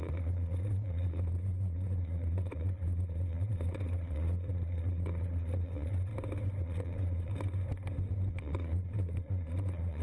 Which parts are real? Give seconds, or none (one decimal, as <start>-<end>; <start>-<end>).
6.1-6.6; 7.3-8.3